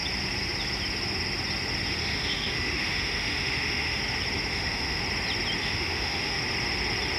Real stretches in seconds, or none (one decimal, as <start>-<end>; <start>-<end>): 0.0-2.0; 4.0-4.5; 5.0-5.6; 6.4-7.2